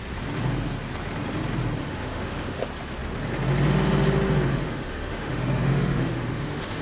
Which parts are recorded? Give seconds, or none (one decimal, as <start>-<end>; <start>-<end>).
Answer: 0.0-1.8; 2.6-4.5